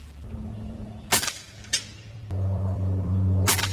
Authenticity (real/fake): fake